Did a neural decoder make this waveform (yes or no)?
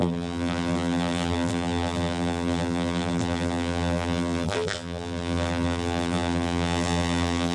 yes